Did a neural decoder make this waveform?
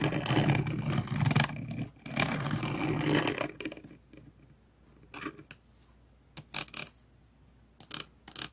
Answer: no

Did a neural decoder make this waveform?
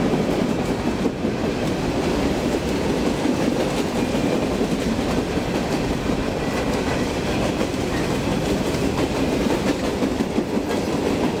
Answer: yes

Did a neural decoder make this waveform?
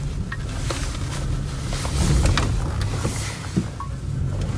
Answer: no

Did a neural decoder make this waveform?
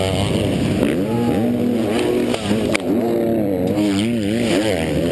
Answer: no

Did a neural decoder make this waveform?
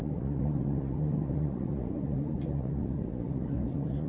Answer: yes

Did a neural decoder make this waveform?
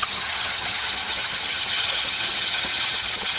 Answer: yes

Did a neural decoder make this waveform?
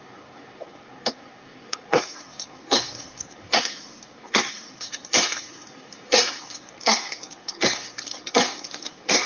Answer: yes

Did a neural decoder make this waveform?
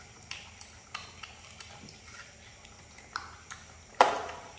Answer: no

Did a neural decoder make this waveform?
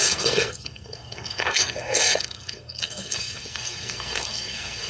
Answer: yes